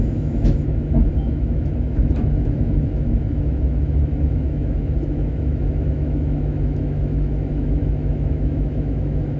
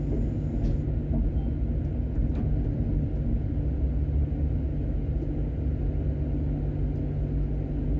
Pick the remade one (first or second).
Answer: first